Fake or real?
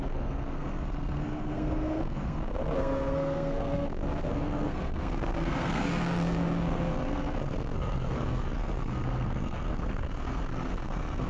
fake